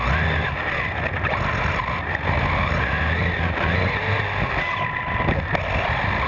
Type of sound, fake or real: real